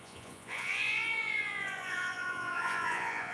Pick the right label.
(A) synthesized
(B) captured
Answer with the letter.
A